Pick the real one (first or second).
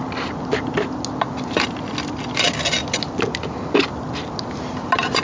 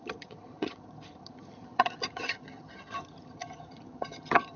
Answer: first